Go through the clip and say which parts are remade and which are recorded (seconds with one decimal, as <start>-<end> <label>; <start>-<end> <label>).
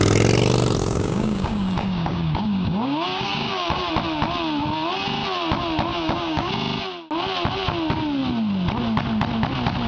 0.0-0.8 recorded; 0.8-3.9 remade; 3.9-5.9 recorded; 5.9-6.5 remade; 6.5-9.9 recorded